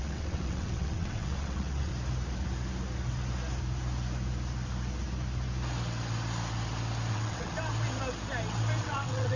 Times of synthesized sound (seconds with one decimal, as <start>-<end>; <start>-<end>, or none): 0.0-1.9; 7.1-7.5; 8.8-9.4